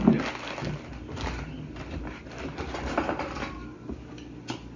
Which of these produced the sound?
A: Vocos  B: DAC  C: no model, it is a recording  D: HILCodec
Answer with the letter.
C